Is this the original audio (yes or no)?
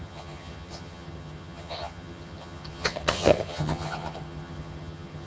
no